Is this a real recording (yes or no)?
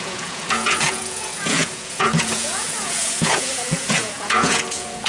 no